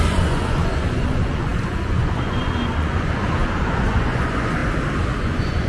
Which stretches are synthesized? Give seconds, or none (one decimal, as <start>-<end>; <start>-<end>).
0.0-4.6; 5.2-5.7